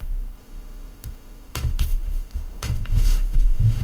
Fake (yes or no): yes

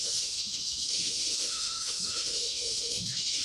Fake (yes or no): yes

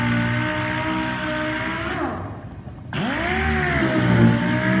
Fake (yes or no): no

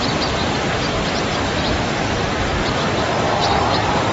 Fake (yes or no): no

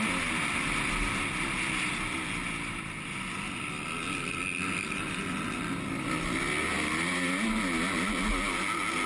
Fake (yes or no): no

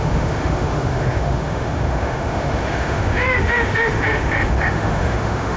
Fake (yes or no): yes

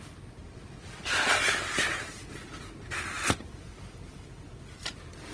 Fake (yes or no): no